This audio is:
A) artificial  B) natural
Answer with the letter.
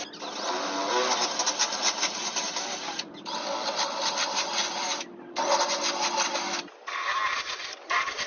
B